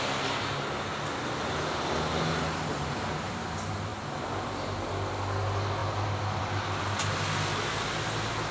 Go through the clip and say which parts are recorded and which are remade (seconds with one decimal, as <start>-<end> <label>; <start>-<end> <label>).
0.0-8.5 recorded